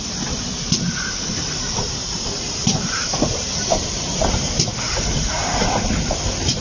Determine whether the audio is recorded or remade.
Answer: remade